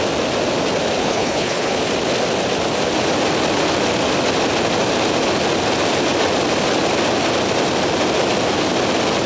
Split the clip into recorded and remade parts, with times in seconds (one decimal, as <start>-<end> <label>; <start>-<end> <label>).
0.0-1.0 recorded; 1.0-1.8 remade; 1.8-9.3 recorded